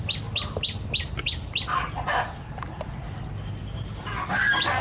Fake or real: real